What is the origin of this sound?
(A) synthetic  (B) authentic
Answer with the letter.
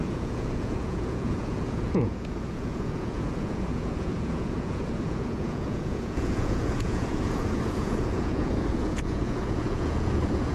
A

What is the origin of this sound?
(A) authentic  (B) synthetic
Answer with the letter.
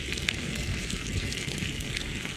B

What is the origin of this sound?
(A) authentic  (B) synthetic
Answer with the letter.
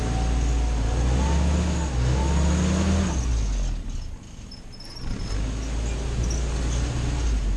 A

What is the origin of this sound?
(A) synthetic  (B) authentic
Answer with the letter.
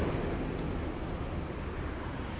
B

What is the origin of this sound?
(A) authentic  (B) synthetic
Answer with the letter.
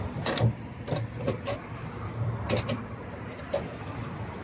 B